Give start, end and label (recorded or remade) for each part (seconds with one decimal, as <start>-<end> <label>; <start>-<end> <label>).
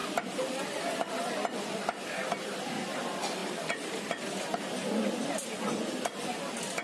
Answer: 0.0-1.1 remade; 1.1-6.8 recorded